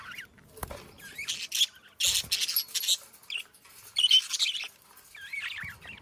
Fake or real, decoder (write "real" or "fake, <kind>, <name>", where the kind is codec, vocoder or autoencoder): real